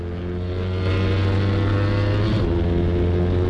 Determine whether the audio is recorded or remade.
recorded